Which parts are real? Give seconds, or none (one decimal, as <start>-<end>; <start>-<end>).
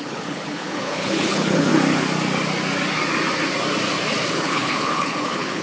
1.7-4.3